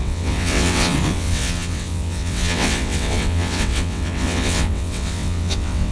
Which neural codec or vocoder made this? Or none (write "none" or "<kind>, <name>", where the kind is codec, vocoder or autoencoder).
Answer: vocoder, WaveNeXt